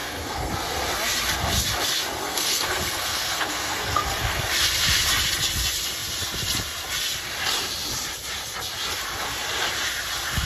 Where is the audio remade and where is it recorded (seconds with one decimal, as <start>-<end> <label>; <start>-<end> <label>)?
0.0-0.5 remade; 0.5-2.2 recorded; 2.2-4.4 remade; 4.4-10.5 recorded